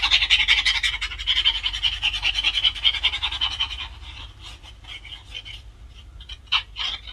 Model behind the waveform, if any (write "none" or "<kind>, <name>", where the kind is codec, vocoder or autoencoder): none